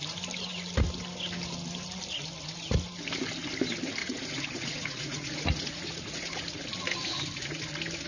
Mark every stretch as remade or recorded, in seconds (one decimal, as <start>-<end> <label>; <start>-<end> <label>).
0.0-4.0 recorded; 4.0-6.6 remade; 6.6-8.1 recorded